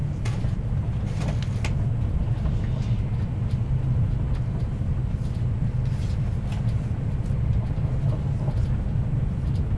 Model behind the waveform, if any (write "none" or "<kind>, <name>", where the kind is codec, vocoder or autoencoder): none